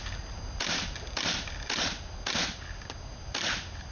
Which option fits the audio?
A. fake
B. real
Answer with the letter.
B